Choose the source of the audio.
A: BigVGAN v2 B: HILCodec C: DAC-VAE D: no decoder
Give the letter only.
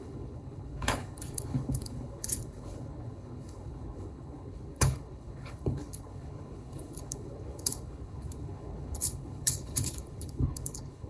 B